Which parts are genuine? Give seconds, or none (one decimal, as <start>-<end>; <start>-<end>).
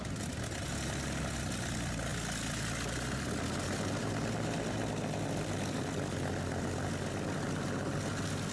0.0-8.5